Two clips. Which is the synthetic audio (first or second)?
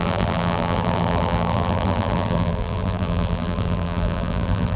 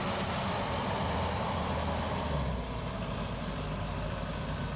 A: first